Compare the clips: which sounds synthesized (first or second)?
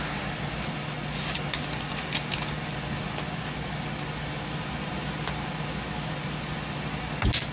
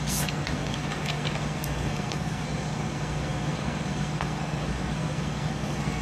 second